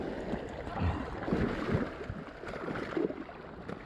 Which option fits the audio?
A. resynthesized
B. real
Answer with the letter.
B